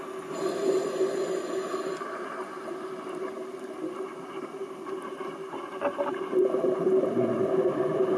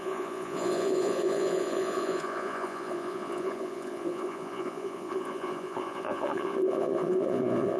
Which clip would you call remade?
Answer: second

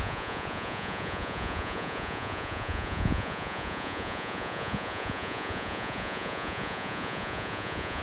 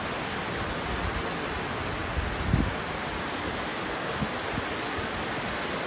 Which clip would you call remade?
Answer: first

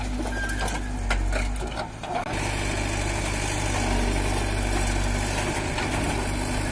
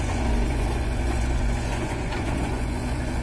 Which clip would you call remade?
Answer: second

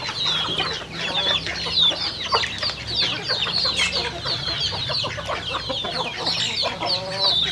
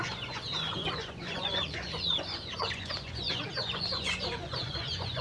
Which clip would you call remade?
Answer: second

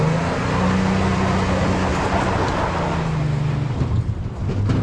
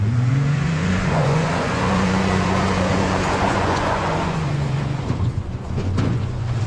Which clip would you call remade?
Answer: second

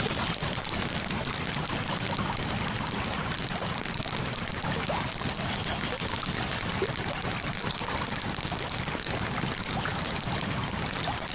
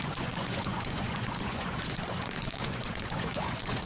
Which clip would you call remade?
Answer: second